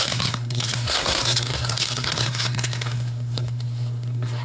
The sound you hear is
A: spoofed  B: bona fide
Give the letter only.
A